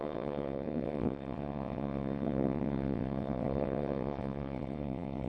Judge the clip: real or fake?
fake